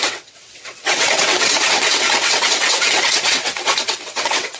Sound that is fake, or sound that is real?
fake